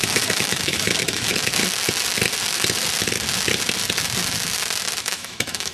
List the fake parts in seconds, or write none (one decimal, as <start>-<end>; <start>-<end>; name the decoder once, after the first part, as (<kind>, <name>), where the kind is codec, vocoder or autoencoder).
0.0-1.6 (autoencoder, DAC-VAE); 5.0-5.7